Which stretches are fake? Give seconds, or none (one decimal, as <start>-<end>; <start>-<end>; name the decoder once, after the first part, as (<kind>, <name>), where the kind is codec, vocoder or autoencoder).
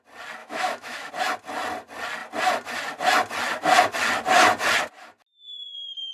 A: 0.4-1.1 (autoencoder, DAC-VAE)